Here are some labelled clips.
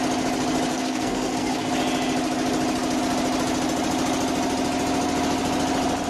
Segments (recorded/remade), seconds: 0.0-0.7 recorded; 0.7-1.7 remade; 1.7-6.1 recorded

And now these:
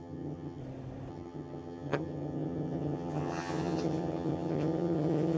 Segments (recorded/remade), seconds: 0.0-0.6 remade; 0.6-1.1 recorded; 1.1-5.4 remade

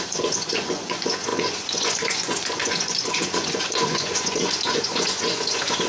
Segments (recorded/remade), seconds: 0.0-5.9 remade

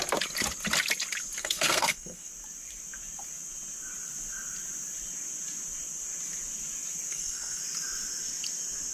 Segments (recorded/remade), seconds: 0.0-1.4 recorded; 1.4-2.3 remade; 2.3-7.1 recorded; 7.1-7.6 remade; 7.6-8.9 recorded